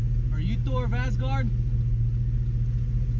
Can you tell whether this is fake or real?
real